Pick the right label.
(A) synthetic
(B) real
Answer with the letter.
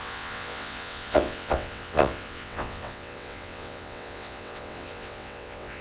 A